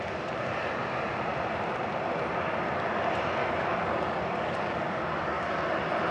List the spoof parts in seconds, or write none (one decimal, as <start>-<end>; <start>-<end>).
3.4-5.6